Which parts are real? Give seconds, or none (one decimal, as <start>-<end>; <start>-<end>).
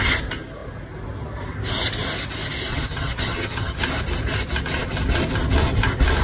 0.0-2.7; 3.8-6.2